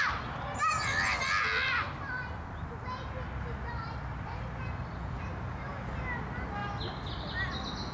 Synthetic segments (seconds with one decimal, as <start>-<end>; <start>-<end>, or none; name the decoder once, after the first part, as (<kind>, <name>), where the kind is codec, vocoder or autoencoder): none